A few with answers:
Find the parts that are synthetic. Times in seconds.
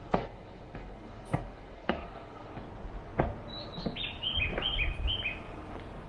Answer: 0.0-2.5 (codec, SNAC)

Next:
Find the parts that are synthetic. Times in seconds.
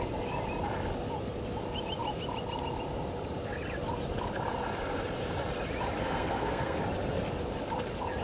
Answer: 6.0-6.8 (codec, SNAC)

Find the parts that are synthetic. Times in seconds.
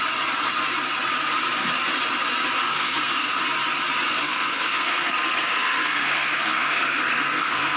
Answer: 2.6-3.4 (codec, SNAC); 4.2-7.8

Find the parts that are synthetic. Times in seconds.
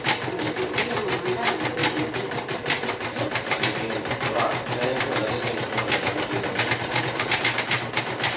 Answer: none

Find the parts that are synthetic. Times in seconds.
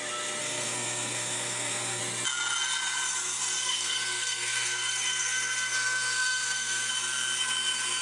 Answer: 0.4-2.0 (codec, SNAC); 3.6-6.9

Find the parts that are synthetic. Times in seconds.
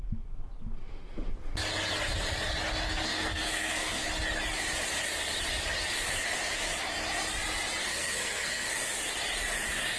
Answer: 3.0-4.1 (codec, SNAC); 7.8-8.7